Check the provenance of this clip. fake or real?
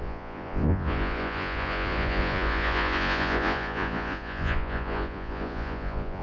fake